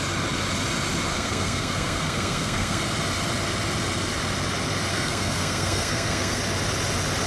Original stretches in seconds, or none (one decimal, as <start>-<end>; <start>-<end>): 0.0-1.1; 2.8-4.9; 6.4-7.3